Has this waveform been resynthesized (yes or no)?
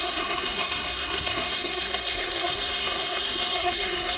yes